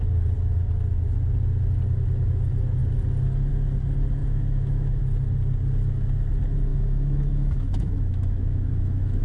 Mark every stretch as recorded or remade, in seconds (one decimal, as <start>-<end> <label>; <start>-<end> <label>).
0.0-4.2 recorded; 4.2-5.0 remade; 5.0-6.7 recorded; 6.7-9.2 remade